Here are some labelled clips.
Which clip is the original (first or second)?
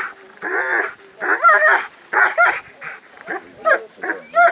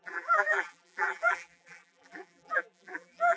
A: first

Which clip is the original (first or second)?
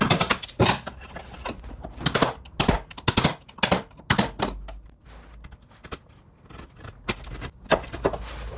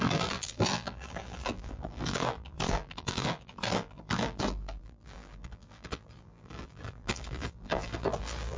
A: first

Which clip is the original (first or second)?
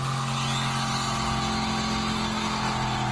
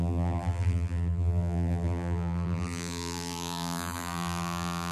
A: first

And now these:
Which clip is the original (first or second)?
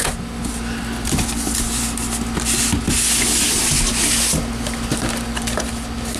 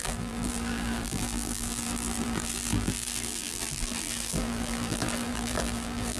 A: first